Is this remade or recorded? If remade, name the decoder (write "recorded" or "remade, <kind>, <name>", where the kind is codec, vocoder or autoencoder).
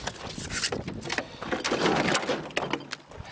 recorded